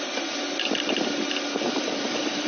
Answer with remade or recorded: recorded